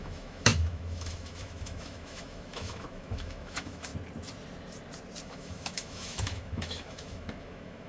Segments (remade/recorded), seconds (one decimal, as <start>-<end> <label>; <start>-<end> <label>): 0.0-3.9 remade; 3.9-5.2 recorded; 5.2-7.9 remade